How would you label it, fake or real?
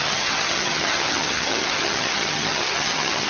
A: fake